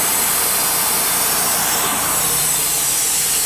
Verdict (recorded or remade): remade